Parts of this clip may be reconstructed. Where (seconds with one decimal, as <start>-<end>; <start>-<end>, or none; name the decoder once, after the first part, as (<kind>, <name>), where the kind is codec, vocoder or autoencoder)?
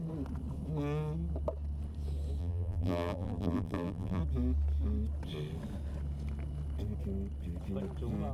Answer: 2.4-4.2 (vocoder, BigVGAN v2)